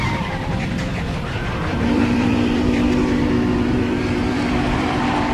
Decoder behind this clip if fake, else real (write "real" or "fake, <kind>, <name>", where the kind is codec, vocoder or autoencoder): fake, vocoder, BigVGAN v2